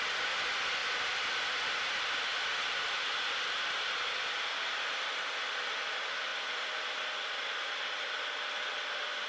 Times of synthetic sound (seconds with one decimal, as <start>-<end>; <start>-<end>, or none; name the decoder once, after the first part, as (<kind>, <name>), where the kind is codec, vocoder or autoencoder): none